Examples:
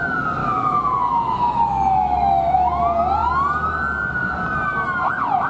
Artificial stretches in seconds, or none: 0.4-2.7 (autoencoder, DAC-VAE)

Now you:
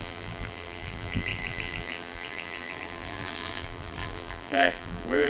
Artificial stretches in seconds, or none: 0.0-5.3 (vocoder, BigVGAN v2)

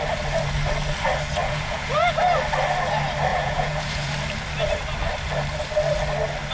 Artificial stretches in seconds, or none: 1.4-2.1 (vocoder, Vocos); 3.3-4.1

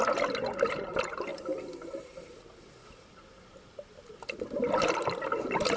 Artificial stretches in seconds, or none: none

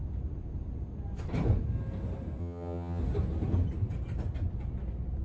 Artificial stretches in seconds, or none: 2.4-3.0 (vocoder, HiFi-GAN)

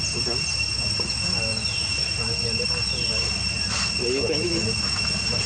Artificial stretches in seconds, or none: none

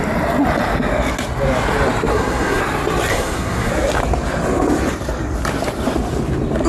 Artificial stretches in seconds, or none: 2.1-2.6 (codec, SNAC); 3.1-3.7

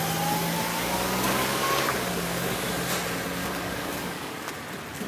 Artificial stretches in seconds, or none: 0.7-2.7 (codec, DAC); 3.4-4.5